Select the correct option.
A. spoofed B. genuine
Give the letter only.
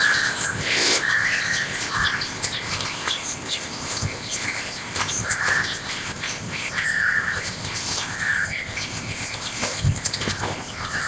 A